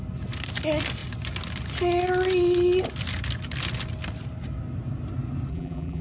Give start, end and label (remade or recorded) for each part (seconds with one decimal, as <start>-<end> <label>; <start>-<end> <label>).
0.0-5.5 recorded; 5.5-6.0 remade